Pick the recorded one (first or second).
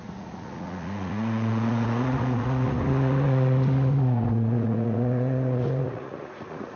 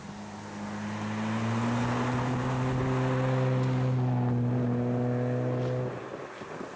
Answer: second